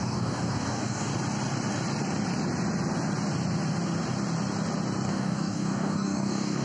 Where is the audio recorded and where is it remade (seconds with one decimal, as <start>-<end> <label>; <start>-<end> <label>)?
0.0-1.1 remade; 1.1-5.1 recorded; 5.1-6.6 remade